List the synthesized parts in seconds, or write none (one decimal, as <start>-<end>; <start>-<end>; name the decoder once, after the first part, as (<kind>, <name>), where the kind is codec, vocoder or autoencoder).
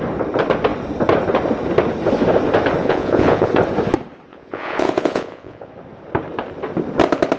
2.8-3.5 (vocoder, Vocos); 4.3-5.7